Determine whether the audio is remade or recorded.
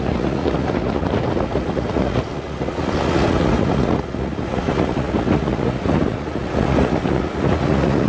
remade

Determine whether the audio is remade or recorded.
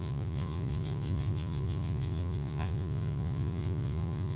remade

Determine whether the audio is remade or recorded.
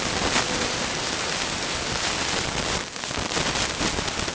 recorded